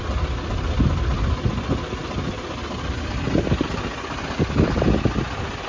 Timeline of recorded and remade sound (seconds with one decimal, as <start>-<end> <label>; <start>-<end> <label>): 0.0-5.7 recorded